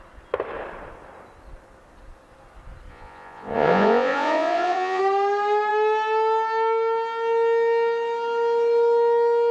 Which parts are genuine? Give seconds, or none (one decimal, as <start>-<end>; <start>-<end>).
0.0-2.9; 5.0-9.5